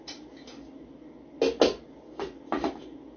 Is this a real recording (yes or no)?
yes